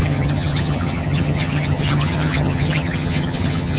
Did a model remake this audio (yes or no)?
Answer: yes